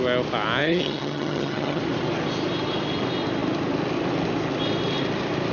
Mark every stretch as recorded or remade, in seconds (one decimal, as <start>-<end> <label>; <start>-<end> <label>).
0.0-0.6 recorded; 0.6-1.8 remade; 1.8-5.5 recorded